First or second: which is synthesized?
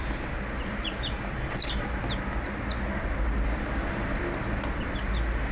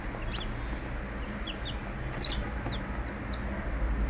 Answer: first